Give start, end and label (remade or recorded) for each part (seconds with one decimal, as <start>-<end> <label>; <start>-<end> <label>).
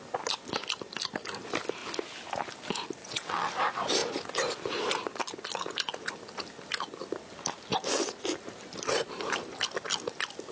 0.0-3.0 recorded; 3.0-3.5 remade; 3.5-10.5 recorded